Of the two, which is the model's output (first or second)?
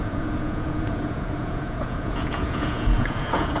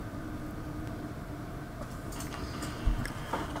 first